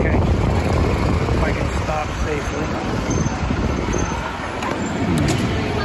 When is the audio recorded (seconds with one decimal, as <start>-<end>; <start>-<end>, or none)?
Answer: 0.0-5.8